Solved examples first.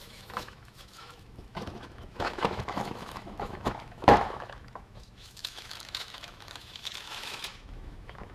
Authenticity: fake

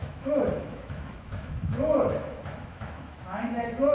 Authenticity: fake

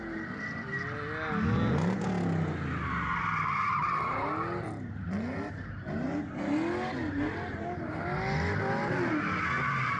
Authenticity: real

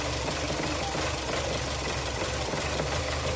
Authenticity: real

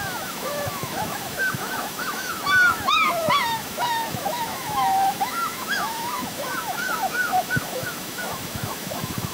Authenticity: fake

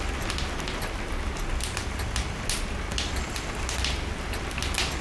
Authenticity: real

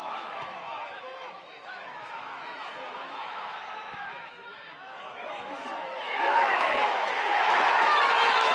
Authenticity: fake